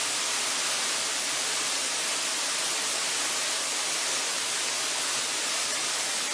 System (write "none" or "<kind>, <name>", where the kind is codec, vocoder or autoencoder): none